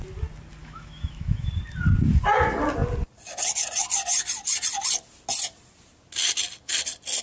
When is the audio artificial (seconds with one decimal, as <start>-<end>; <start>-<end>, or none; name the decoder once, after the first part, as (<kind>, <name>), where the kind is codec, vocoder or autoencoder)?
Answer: 0.6-1.5 (autoencoder, DAC-VAE)